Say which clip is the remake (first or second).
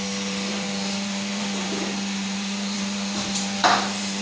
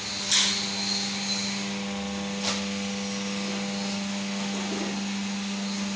first